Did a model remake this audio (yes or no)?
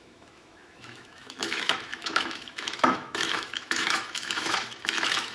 yes